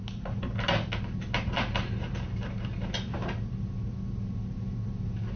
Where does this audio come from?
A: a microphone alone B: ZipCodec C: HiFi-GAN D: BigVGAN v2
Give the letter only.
A